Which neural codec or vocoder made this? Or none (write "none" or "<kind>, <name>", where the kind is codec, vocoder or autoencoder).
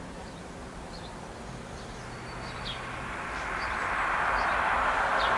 vocoder, BigVGAN v2